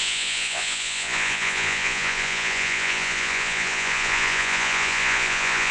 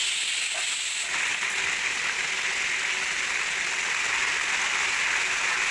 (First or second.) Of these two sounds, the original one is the second